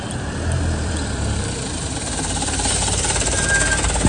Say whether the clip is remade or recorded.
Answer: remade